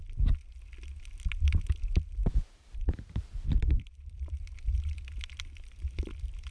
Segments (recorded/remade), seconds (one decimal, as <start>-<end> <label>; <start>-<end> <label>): 0.0-2.2 recorded; 2.2-6.1 remade; 6.1-6.5 recorded